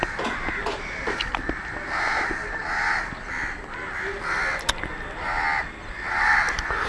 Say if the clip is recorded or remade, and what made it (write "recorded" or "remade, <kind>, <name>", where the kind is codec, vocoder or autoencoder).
recorded